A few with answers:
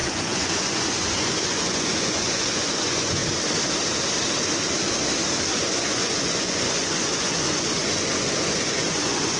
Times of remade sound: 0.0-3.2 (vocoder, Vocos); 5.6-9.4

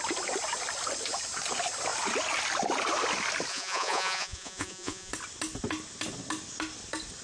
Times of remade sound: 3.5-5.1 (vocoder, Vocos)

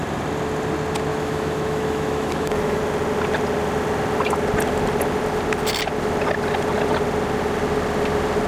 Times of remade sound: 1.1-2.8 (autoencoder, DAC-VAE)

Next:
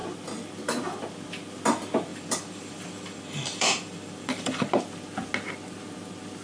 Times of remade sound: 2.1-4.8 (vocoder, BigVGAN v2)

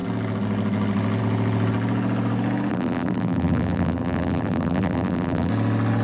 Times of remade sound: 2.7-5.5 (vocoder, BigVGAN v2)

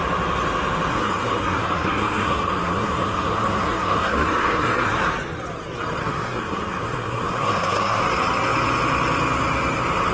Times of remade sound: 0.9-5.0 (codec, SNAC); 6.0-8.0